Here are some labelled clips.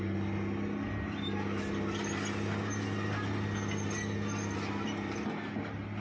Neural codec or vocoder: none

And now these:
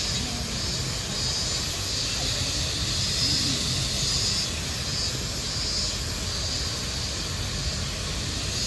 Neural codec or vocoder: none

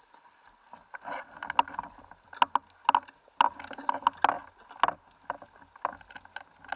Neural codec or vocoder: none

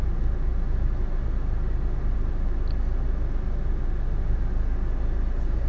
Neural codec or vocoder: none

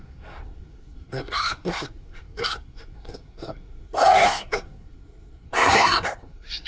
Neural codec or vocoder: codec, SNAC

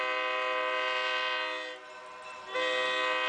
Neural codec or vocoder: none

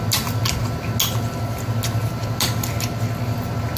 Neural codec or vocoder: none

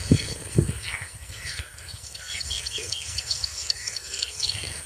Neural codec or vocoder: codec, SNAC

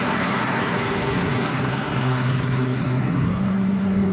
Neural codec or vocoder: codec, SNAC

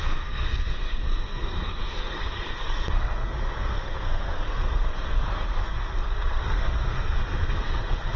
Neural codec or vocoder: codec, SNAC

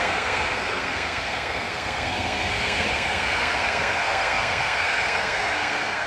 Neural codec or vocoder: codec, SNAC